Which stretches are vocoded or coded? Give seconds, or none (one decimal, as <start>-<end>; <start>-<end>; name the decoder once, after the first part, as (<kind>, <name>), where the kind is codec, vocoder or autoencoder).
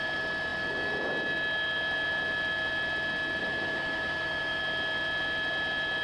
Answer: 3.4-4.6 (autoencoder, DAC-VAE)